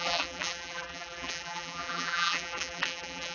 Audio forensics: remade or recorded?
remade